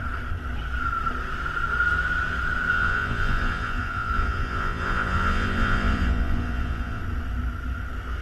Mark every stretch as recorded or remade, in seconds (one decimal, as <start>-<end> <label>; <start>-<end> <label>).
0.0-2.7 recorded; 2.7-7.0 remade; 7.0-8.2 recorded